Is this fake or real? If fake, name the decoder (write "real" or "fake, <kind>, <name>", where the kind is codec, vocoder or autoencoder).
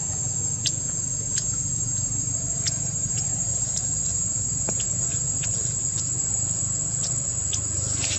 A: fake, vocoder, Vocos